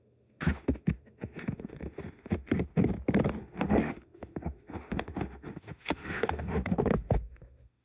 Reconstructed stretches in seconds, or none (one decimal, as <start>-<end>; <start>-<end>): 0.0-2.9; 3.4-7.8